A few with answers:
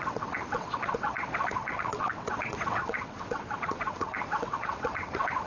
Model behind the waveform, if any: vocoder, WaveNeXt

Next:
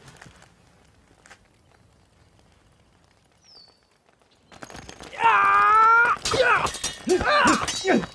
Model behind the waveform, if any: none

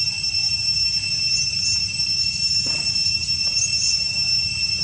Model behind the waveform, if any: none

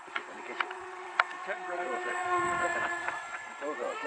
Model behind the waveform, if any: vocoder, WaveNeXt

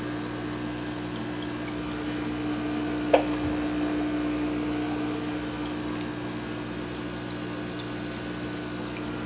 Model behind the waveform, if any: none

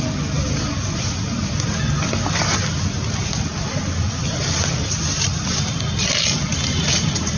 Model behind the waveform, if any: none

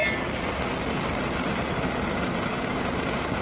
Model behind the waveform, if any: none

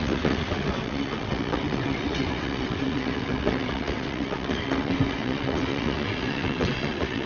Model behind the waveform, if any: vocoder, WaveNeXt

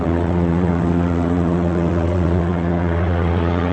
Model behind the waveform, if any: vocoder, WaveNeXt